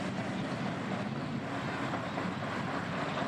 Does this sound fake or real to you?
real